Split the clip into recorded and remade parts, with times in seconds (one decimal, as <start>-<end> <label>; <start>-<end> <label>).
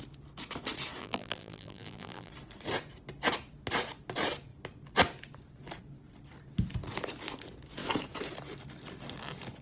0.0-1.0 recorded; 1.0-2.3 remade; 2.3-9.6 recorded